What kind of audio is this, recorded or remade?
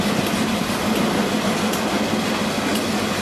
recorded